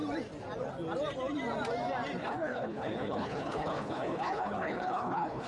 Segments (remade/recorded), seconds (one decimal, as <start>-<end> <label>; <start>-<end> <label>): 0.0-2.2 recorded; 2.2-5.5 remade